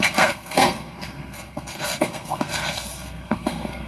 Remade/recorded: remade